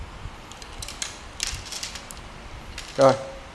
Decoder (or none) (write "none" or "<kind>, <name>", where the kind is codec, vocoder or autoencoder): none